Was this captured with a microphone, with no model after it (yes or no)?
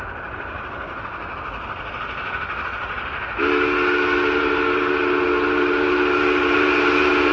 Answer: yes